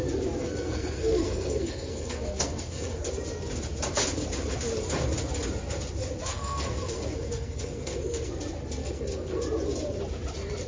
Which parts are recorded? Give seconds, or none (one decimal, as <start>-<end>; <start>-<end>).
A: 0.0-0.4; 3.1-6.3; 8.4-8.8; 9.4-10.7